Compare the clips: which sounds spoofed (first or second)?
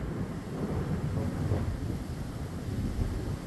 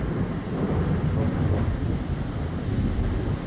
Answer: first